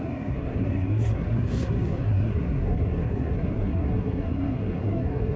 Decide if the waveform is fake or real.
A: fake